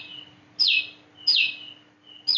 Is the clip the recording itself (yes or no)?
yes